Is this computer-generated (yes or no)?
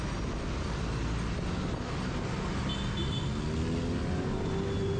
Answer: no